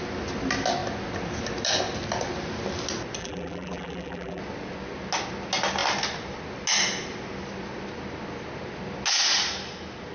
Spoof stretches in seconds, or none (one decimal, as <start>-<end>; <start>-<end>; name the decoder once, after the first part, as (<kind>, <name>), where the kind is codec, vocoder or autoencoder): 3.2-4.4 (vocoder, BigVGAN v2)